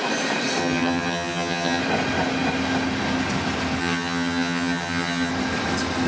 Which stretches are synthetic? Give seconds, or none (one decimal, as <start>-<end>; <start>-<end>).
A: 0.6-1.8; 3.8-5.3